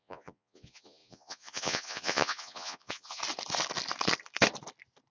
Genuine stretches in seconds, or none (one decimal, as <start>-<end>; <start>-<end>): 3.2-5.1